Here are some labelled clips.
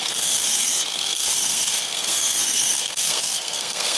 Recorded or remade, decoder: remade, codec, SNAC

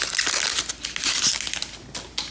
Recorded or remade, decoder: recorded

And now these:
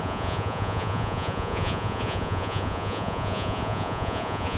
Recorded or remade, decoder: remade, vocoder, Vocos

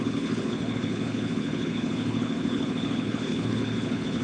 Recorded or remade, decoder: remade, codec, HILCodec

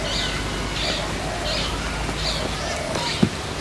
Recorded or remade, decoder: recorded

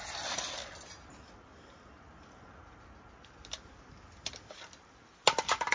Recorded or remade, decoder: recorded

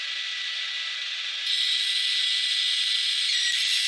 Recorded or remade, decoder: recorded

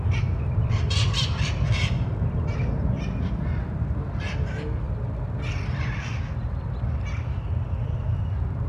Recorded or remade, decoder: recorded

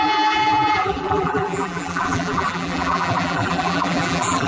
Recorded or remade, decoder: remade, vocoder, BigVGAN v2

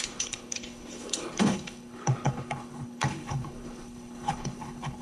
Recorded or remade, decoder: remade, codec, HILCodec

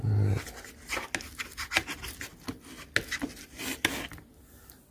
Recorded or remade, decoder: recorded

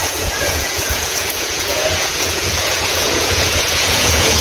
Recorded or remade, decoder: remade, vocoder, Vocos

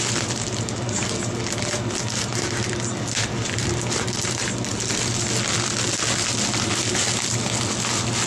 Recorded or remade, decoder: recorded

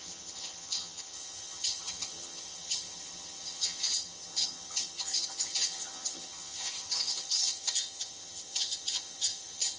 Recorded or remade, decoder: remade, vocoder, HiFi-GAN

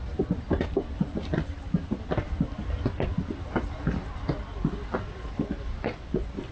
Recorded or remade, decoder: recorded